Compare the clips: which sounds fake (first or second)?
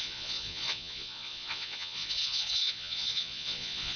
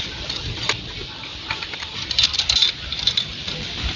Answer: first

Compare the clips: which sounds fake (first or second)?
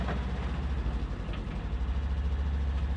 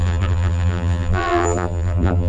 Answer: second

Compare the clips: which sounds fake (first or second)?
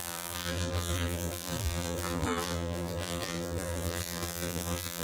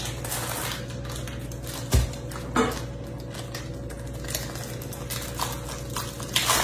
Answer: first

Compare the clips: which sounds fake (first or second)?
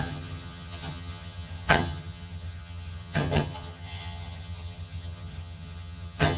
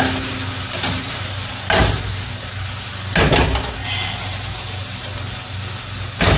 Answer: first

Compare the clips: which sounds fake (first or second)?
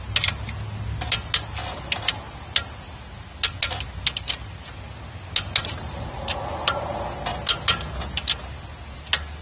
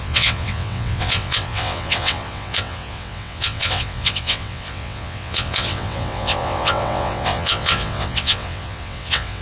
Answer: second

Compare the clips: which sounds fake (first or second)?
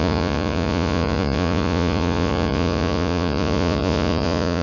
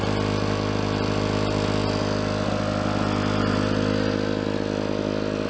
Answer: first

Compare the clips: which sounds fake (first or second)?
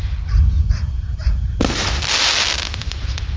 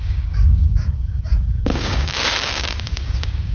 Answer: second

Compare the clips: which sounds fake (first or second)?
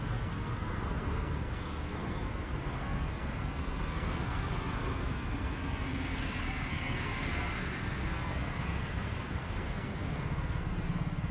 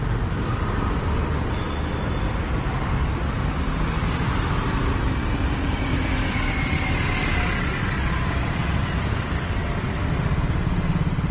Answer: first